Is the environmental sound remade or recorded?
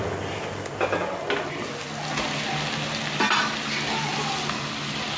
recorded